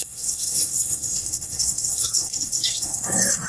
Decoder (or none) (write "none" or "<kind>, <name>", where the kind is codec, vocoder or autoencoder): codec, SNAC